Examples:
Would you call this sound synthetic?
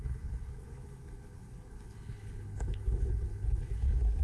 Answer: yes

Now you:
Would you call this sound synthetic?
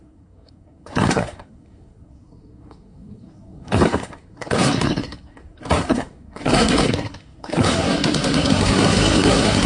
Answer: yes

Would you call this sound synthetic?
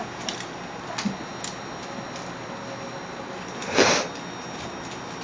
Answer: no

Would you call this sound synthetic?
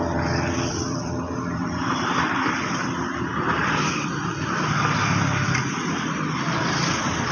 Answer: yes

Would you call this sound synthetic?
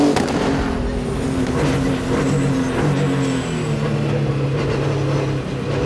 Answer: no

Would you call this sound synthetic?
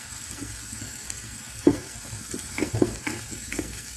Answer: yes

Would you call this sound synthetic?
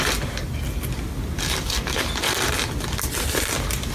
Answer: no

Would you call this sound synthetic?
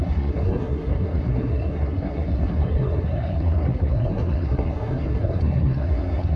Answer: yes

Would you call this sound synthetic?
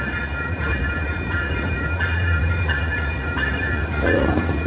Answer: yes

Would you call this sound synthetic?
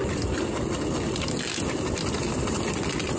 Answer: no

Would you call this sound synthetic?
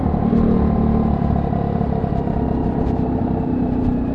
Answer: no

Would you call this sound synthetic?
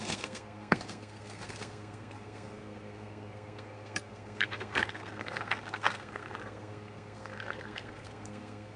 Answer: yes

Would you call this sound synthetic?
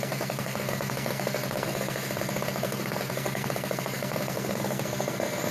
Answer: yes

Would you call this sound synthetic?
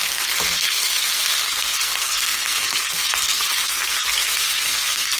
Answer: yes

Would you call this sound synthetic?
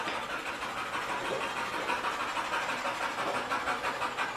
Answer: no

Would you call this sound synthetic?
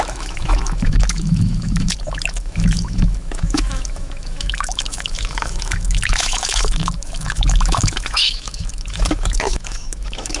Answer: yes